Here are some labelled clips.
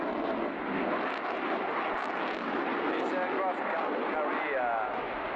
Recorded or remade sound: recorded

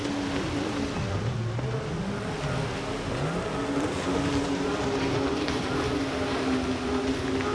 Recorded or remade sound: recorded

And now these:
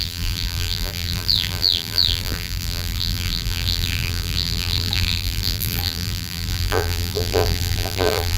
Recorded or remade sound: remade